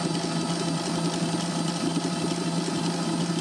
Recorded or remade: recorded